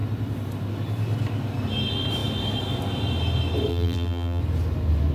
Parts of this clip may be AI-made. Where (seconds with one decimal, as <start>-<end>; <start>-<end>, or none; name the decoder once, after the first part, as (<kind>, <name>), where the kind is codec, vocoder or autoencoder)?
3.7-4.4 (vocoder, BigVGAN v2)